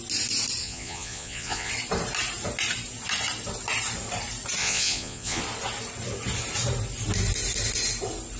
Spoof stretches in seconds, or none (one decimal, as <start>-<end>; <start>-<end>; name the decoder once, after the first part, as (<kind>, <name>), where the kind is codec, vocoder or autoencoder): 0.6-1.7 (vocoder, Vocos); 4.6-5.4